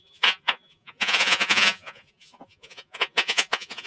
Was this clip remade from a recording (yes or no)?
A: yes